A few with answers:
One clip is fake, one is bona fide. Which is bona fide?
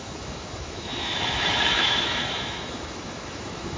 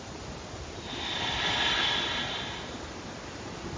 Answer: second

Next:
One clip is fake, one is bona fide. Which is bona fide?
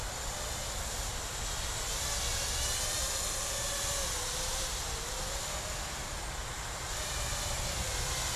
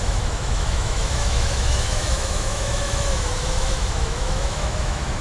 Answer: first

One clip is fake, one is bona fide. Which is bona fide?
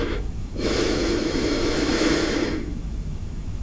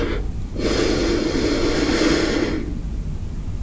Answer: second